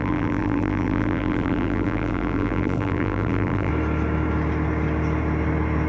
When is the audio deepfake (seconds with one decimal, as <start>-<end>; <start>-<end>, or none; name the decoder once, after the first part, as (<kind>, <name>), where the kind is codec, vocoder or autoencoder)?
0.0-3.7 (vocoder, BigVGAN v2)